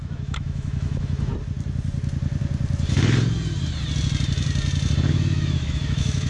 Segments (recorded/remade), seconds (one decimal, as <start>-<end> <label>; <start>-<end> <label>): 0.0-1.3 remade; 1.3-5.1 recorded; 5.1-6.3 remade